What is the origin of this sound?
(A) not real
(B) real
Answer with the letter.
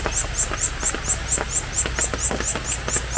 B